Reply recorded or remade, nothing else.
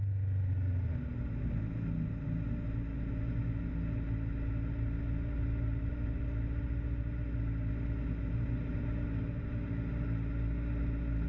recorded